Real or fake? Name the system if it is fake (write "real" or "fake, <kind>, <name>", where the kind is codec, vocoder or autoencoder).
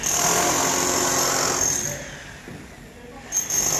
real